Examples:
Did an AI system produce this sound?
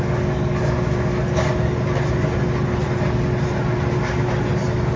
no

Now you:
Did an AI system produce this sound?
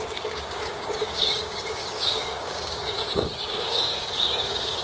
yes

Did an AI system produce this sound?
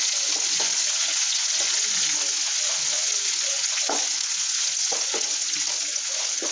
yes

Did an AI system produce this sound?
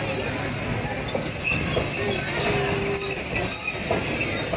no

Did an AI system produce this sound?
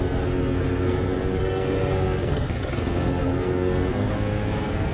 yes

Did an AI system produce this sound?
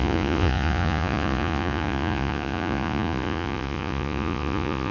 yes